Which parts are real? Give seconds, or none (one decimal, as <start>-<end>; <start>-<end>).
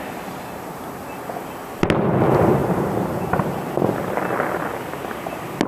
0.0-2.6; 3.4-5.7